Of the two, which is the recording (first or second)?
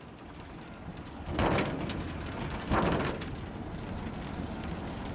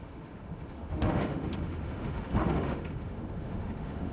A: first